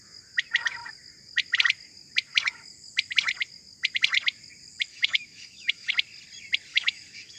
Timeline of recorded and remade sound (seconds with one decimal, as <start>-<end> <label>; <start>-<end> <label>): 0.0-4.9 recorded; 4.9-5.9 remade; 5.9-6.7 recorded; 6.7-7.4 remade